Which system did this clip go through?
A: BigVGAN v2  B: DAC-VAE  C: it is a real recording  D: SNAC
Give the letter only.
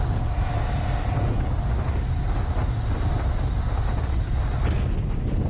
C